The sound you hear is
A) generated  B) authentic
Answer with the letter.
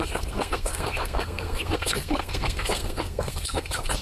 A